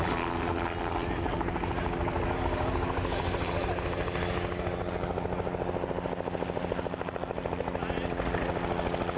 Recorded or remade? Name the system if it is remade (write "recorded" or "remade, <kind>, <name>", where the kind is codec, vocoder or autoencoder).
recorded